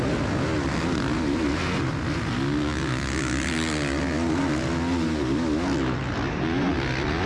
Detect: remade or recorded recorded